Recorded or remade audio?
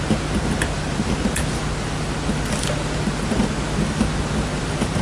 recorded